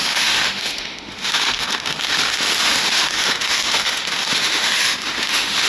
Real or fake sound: fake